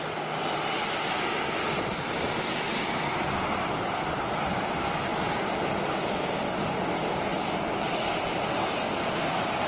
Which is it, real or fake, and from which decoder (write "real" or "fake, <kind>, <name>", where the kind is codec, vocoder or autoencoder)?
real